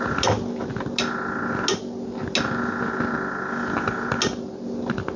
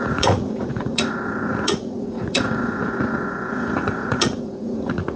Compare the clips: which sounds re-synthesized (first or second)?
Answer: second